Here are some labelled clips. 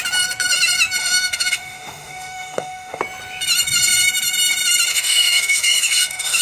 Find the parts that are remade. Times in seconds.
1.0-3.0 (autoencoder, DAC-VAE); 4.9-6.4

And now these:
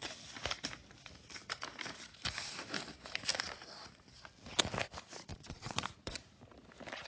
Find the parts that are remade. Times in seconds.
5.3-6.3 (vocoder, Vocos)

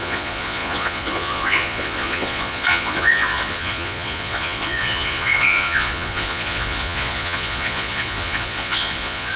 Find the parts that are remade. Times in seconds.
0.0-9.4 (vocoder, Vocos)